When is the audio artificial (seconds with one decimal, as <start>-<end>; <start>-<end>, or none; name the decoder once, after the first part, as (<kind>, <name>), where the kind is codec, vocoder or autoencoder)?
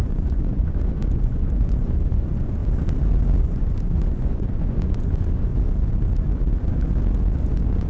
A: 0.0-2.6 (vocoder, Vocos); 3.4-5.5; 7.4-7.9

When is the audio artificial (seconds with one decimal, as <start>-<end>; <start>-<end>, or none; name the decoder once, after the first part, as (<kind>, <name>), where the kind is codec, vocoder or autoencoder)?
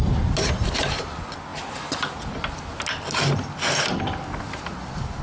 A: none